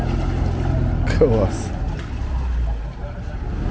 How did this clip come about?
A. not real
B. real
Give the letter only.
B